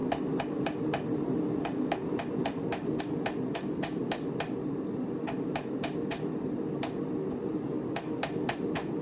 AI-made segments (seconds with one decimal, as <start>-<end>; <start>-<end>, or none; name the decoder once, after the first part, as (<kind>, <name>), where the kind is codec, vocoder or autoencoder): none

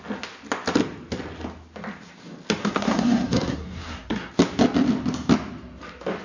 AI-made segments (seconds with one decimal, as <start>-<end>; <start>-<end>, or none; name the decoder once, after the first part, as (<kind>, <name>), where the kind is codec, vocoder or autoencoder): 2.6-4.3 (codec, SNAC)

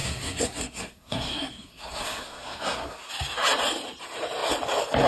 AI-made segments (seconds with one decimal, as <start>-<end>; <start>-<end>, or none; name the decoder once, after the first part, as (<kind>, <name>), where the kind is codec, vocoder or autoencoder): 0.0-3.1 (codec, SNAC)

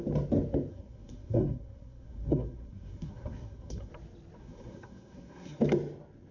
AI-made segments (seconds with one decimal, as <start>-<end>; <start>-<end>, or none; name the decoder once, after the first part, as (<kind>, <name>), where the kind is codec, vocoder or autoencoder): 0.7-3.9 (codec, SNAC); 4.4-5.6